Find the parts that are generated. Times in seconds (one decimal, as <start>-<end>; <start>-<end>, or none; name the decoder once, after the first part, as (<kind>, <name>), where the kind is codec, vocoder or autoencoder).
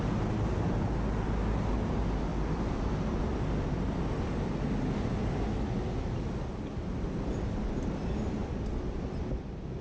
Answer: none